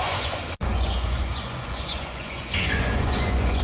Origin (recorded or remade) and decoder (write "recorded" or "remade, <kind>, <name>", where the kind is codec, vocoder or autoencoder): remade, vocoder, Vocos